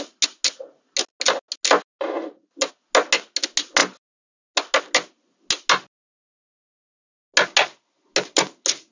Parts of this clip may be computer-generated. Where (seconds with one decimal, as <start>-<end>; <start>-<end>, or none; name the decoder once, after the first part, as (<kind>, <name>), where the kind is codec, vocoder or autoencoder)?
none